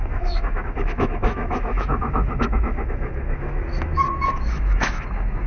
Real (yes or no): no